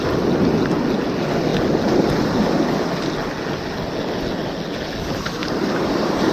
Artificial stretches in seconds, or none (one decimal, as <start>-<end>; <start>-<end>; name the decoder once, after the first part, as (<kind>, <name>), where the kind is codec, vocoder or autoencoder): 5.4-6.3 (vocoder, BigVGAN v2)